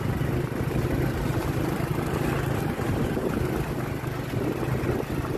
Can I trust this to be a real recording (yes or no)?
yes